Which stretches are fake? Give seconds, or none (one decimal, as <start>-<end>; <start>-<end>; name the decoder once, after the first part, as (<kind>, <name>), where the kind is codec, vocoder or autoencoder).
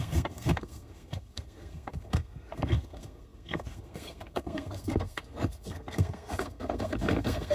0.0-7.5 (codec, SNAC)